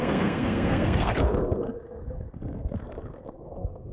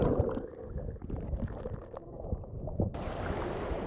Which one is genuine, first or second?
second